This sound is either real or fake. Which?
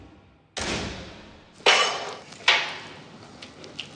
real